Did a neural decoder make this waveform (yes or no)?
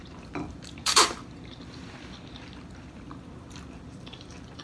yes